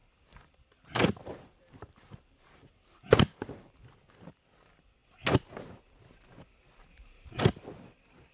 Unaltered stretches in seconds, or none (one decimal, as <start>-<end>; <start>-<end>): 3.8-6.9; 7.4-8.3